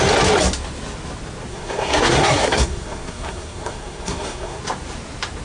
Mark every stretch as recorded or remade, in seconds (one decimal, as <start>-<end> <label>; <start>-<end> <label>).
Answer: 0.0-1.5 recorded; 1.5-4.6 remade; 4.6-5.4 recorded